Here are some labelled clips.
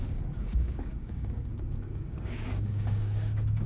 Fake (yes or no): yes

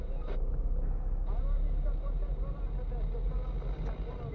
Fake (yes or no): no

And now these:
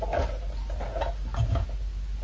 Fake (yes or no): no